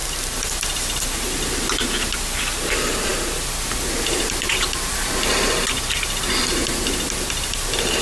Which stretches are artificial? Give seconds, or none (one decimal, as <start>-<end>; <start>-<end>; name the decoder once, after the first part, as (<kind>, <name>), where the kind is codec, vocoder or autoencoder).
none